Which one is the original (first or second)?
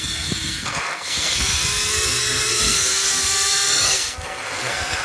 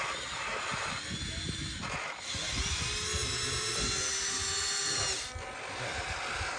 second